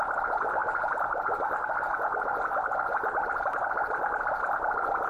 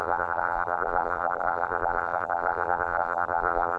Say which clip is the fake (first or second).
second